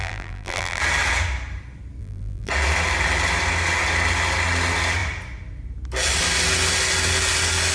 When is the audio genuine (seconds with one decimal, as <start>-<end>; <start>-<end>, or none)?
0.8-2.0; 2.5-7.7